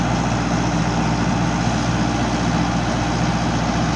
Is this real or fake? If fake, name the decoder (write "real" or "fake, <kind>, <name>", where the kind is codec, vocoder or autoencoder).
real